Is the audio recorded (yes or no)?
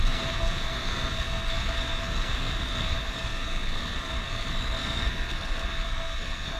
no